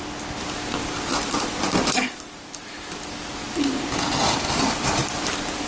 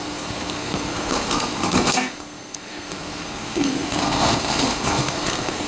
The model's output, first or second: second